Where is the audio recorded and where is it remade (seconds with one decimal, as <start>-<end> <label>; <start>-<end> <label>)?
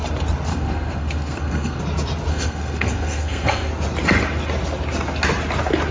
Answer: 0.0-0.5 recorded; 0.5-1.8 remade; 1.8-2.3 recorded; 2.3-3.7 remade; 3.7-5.9 recorded